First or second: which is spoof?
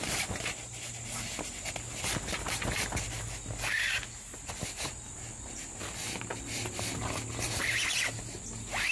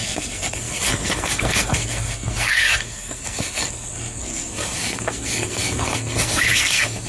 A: second